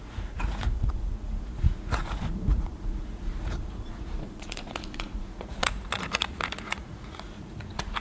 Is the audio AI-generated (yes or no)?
yes